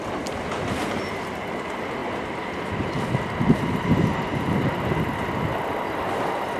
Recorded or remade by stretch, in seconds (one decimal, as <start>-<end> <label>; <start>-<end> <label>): 0.0-6.6 recorded